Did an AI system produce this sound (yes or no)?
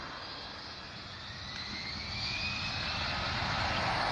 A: no